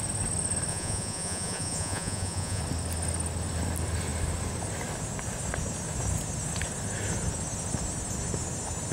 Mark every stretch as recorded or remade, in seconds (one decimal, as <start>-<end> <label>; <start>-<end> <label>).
0.0-0.7 recorded; 0.7-2.6 remade; 2.6-8.9 recorded